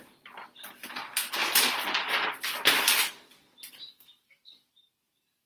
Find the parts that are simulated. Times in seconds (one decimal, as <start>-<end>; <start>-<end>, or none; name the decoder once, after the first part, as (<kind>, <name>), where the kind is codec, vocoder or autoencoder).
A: none